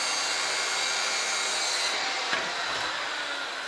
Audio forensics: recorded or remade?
recorded